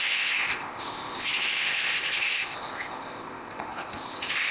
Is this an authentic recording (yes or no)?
no